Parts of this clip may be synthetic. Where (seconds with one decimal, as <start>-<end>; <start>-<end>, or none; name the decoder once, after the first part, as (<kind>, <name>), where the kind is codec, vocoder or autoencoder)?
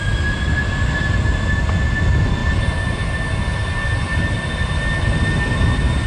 none